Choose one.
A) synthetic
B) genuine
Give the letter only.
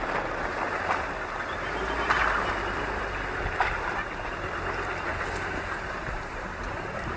B